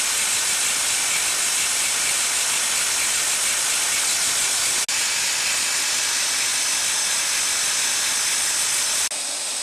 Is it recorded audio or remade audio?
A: recorded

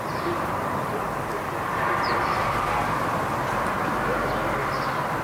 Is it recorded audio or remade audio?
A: remade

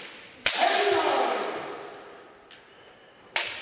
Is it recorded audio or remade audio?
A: recorded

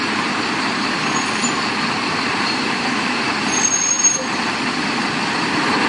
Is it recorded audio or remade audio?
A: remade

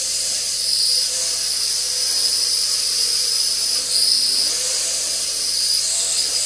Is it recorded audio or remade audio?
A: recorded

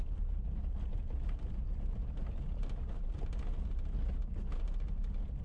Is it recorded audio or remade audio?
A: recorded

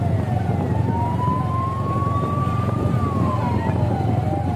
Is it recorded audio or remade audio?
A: recorded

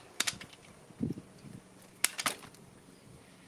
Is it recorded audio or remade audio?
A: recorded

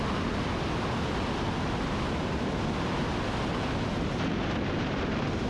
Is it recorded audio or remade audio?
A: recorded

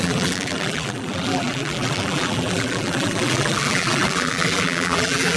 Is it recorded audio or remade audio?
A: remade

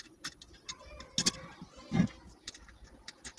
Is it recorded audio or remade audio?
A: recorded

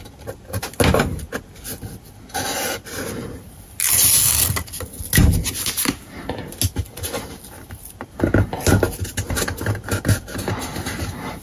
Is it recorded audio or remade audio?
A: recorded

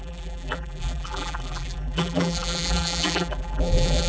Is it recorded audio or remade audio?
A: remade